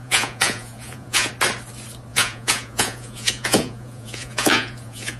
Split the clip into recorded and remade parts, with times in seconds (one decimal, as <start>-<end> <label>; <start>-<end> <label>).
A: 0.0-1.3 remade; 1.3-2.1 recorded; 2.1-5.2 remade